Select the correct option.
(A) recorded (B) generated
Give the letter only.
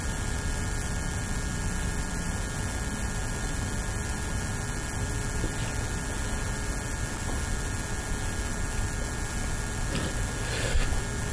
A